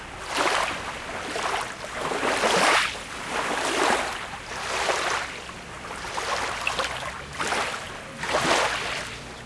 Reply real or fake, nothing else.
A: real